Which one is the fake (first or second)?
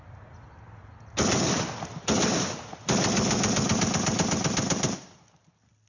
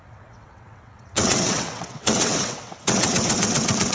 second